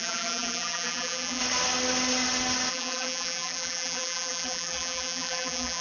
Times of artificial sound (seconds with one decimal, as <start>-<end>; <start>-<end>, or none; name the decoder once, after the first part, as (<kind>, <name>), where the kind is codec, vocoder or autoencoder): 0.0-1.4 (vocoder, BigVGAN v2); 2.7-5.8